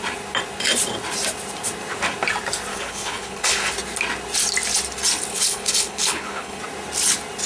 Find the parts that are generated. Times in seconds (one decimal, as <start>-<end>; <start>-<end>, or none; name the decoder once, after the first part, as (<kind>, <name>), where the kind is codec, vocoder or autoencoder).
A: 2.7-3.7 (codec, HILCodec); 5.3-6.6